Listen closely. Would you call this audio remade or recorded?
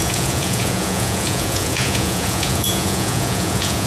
remade